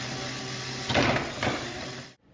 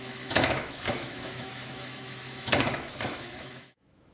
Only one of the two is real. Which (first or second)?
first